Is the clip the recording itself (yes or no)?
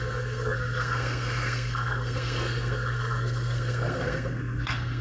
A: no